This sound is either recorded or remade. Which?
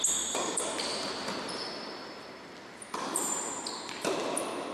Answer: recorded